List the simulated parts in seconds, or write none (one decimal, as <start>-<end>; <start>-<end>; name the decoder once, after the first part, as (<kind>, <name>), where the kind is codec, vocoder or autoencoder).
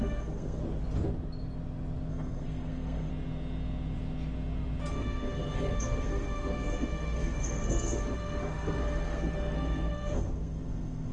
0.0-0.6 (codec, SNAC); 2.1-3.1; 4.9-11.1